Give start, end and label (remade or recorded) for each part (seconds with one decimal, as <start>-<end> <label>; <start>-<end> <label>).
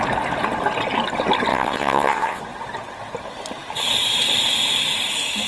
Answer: 0.0-1.5 recorded; 1.5-2.4 remade; 2.4-5.5 recorded